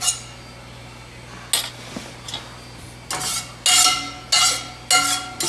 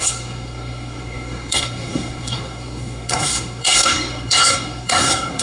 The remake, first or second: second